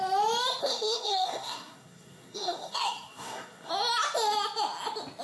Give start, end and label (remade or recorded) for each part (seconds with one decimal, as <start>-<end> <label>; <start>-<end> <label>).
0.0-0.6 recorded; 0.6-3.7 remade; 3.7-5.2 recorded